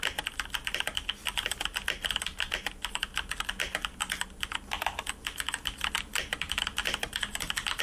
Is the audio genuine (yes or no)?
yes